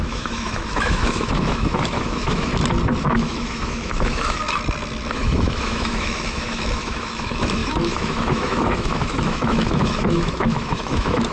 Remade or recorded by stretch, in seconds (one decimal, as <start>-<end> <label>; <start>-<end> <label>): 0.0-2.5 remade; 2.5-3.0 recorded; 3.0-4.4 remade; 4.4-5.1 recorded; 5.1-11.3 remade